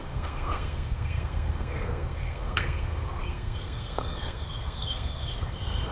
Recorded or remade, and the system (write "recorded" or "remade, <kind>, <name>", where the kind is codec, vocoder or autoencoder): remade, codec, SNAC